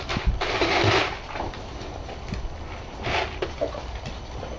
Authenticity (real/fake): real